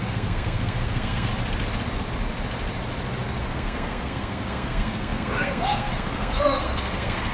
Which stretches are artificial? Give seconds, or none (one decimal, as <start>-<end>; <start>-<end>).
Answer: 0.0-1.3; 3.4-7.3